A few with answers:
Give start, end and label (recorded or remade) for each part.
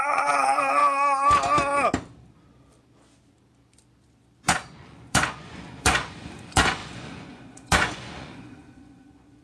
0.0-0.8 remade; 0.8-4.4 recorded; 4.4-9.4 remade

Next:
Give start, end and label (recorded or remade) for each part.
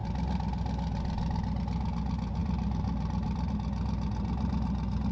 0.0-2.4 recorded; 2.4-3.5 remade; 3.5-5.1 recorded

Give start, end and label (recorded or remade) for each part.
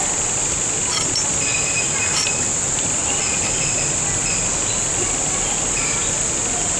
0.0-6.8 recorded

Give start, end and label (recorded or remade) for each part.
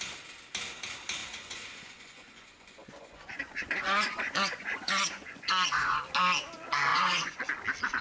0.0-1.2 recorded; 1.2-6.0 remade; 6.0-6.9 recorded; 6.9-7.4 remade; 7.4-8.0 recorded